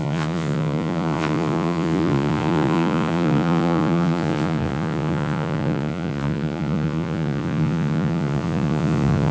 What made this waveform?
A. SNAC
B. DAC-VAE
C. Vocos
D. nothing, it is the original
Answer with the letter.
C